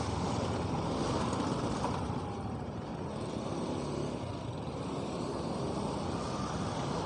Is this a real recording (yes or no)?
yes